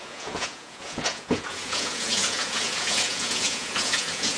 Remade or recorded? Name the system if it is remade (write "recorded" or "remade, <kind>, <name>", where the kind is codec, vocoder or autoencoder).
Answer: remade, vocoder, Vocos